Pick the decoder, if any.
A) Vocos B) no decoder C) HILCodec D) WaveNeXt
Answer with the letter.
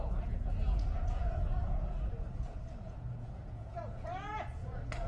A